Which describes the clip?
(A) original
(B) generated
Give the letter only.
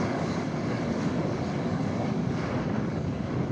B